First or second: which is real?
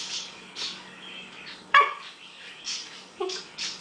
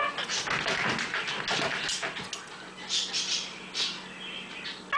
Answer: second